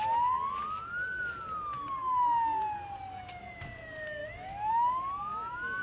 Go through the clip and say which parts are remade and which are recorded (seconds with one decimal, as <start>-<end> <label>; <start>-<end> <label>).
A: 0.0-4.2 recorded; 4.2-4.7 remade; 4.7-5.3 recorded; 5.3-5.8 remade